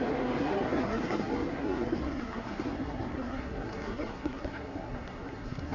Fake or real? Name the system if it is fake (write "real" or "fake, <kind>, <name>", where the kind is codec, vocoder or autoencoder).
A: fake, codec, SNAC